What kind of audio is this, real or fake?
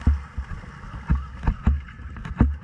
real